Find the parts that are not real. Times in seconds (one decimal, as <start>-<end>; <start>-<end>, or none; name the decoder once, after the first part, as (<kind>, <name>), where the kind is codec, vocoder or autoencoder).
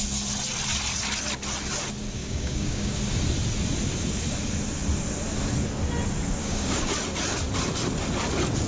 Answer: 2.2-3.0 (codec, DAC); 6.4-6.9